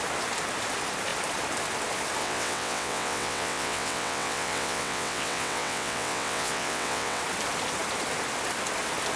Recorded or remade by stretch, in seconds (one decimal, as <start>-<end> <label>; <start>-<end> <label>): 0.0-2.2 recorded; 2.2-7.2 remade; 7.2-9.2 recorded